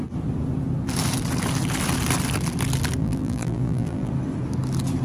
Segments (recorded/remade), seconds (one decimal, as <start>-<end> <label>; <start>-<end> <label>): 0.0-3.0 recorded; 3.0-4.1 remade; 4.1-5.0 recorded